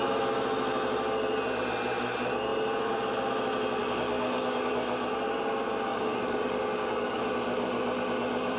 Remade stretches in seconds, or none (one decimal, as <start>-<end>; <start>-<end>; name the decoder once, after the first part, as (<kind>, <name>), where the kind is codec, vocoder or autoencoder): 3.8-4.7 (codec, DAC); 5.9-7.2